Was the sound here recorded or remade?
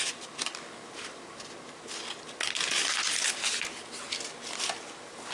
recorded